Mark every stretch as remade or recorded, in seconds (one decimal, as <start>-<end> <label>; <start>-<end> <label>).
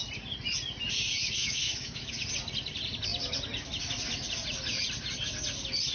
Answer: 0.0-1.2 recorded; 1.2-2.1 remade; 2.1-5.9 recorded